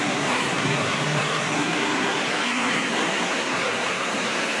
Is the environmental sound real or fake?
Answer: fake